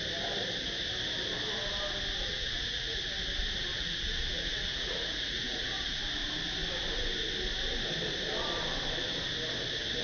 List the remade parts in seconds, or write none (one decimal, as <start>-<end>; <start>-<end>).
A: 2.3-3.0; 3.7-6.0